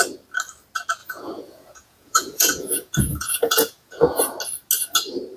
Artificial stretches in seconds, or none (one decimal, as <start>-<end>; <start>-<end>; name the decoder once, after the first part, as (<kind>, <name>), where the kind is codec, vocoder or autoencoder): 1.0-4.2 (vocoder, Vocos)